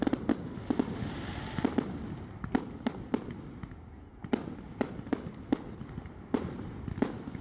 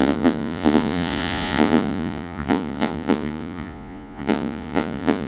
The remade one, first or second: second